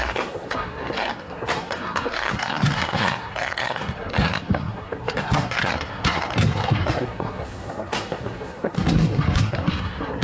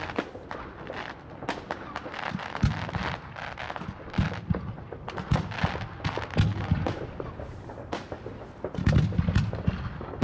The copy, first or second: first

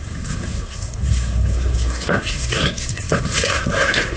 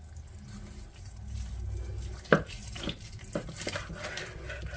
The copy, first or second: first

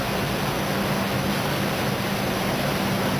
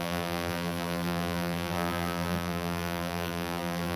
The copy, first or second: second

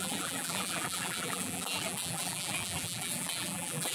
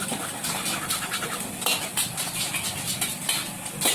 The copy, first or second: first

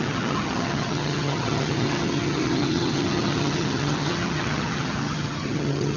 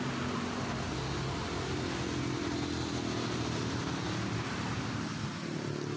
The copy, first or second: first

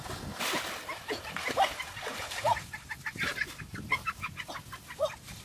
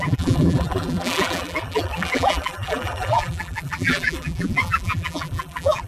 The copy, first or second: second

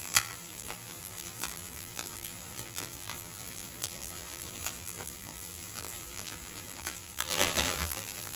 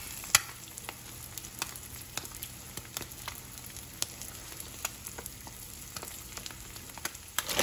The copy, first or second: first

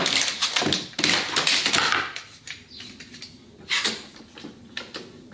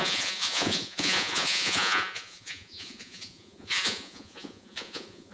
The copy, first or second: second